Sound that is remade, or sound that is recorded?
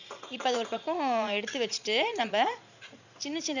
remade